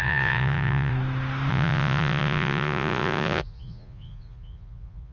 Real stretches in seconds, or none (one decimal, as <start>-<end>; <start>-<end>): 0.9-1.5